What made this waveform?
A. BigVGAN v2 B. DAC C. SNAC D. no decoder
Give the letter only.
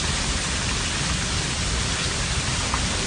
A